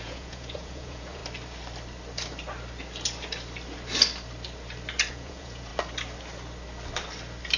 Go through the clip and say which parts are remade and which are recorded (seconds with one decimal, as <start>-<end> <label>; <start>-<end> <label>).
0.0-1.2 remade; 1.2-5.1 recorded; 5.1-5.7 remade; 5.7-7.6 recorded